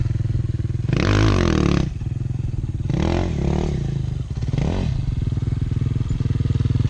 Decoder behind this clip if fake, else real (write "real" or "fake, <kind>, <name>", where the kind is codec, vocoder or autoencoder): real